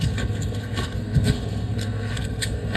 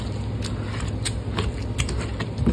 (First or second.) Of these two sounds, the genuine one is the second